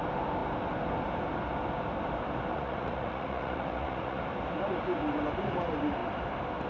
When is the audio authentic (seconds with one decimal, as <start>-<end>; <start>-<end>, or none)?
0.0-2.5; 4.2-6.7